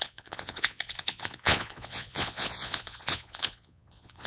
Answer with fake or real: fake